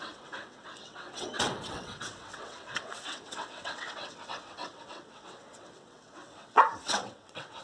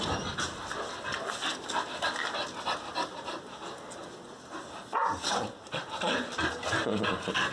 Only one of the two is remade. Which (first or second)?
first